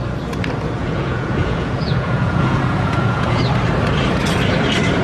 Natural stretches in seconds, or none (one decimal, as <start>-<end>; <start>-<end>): 0.0-0.8; 3.4-5.0